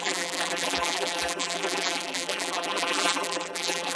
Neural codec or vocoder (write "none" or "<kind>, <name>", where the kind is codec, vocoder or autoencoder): vocoder, BigVGAN v2